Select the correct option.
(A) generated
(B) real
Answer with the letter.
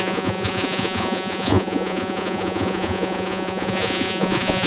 A